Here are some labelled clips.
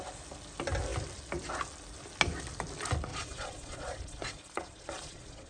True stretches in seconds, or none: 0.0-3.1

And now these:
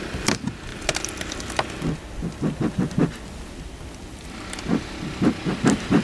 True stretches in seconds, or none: 0.0-6.0

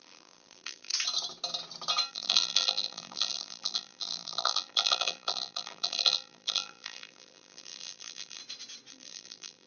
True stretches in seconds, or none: 0.9-2.1; 8.4-8.9

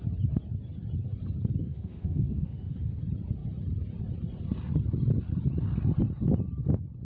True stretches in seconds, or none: 0.0-1.6; 3.0-7.0